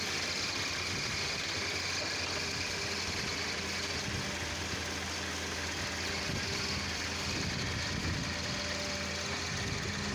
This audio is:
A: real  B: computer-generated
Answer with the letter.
A